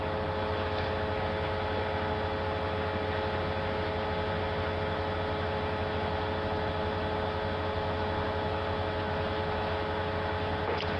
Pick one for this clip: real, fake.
real